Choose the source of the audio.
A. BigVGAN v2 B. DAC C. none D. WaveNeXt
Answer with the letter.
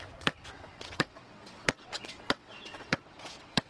D